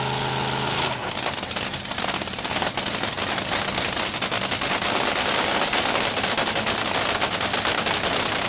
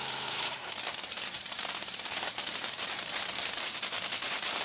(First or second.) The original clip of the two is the first